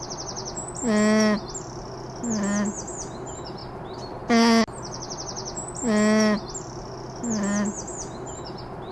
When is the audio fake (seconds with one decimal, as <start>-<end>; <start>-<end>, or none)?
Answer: none